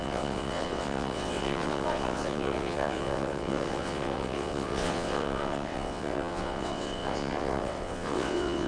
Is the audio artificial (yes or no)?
yes